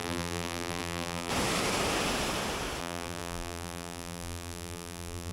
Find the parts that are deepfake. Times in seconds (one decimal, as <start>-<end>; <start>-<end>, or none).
0.0-1.3; 2.8-5.3